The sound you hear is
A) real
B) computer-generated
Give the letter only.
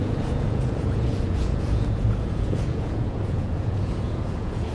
B